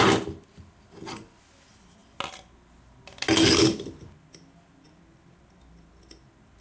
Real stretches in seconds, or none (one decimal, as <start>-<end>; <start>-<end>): 0.0-6.6